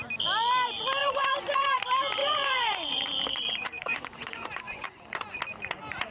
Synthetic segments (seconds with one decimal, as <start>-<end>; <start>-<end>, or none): 1.0-1.8; 2.2-5.4